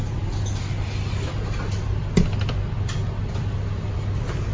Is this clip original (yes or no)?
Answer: yes